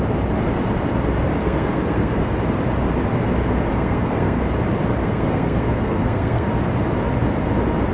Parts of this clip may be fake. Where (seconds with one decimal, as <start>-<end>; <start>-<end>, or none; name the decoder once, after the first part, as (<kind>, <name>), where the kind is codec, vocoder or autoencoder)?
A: 1.4-2.3 (codec, SNAC); 3.7-4.4; 5.0-6.5